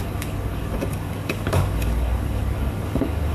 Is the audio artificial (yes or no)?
yes